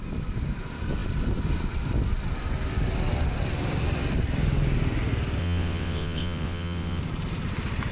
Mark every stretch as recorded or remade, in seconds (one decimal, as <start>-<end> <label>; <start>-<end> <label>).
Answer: 0.0-5.4 recorded; 5.4-7.0 remade; 7.0-7.9 recorded